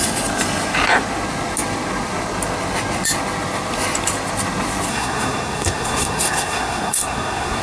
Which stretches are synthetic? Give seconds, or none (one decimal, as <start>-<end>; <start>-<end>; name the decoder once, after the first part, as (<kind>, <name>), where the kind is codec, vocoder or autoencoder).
4.9-7.6 (codec, SNAC)